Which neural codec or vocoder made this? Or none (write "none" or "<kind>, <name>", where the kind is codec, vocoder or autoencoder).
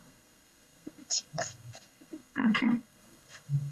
codec, SNAC